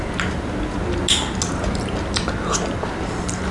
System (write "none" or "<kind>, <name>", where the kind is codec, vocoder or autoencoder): none